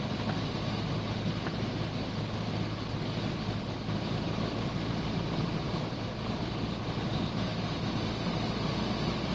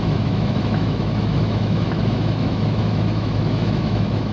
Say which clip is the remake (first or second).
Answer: second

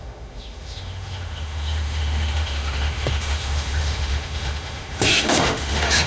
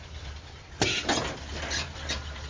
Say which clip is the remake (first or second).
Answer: first